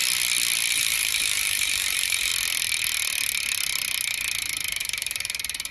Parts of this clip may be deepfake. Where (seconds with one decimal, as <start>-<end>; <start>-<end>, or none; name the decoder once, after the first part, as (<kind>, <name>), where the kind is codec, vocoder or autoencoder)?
0.7-2.3 (vocoder, BigVGAN v2); 4.8-5.7